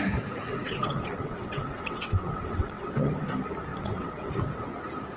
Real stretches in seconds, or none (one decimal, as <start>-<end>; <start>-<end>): 0.0-0.5; 3.1-3.7; 4.3-5.2